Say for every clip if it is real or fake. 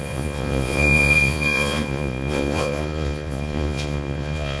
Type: fake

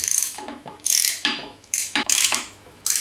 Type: fake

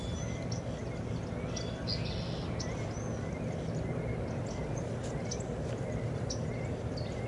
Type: real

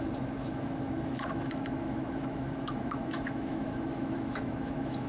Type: fake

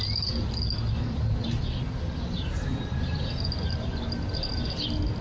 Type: real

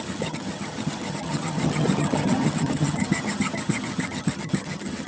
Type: fake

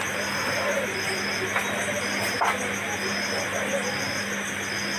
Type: real